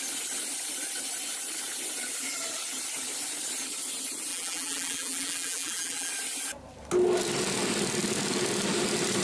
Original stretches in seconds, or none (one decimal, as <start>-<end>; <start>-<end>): 0.0-4.3; 6.1-9.2